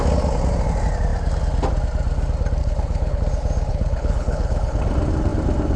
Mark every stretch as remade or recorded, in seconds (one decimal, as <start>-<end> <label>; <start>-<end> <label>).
0.0-2.6 recorded; 2.6-3.2 remade; 3.2-3.7 recorded; 3.7-4.8 remade; 4.8-5.8 recorded